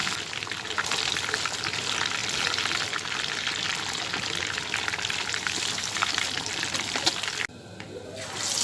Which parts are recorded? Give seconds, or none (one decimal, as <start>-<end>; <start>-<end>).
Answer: 0.0-8.6